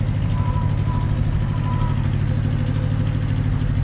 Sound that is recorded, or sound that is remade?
recorded